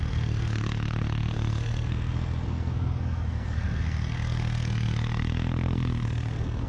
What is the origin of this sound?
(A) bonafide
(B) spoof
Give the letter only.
B